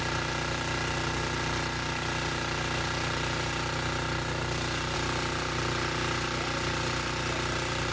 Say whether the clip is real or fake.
real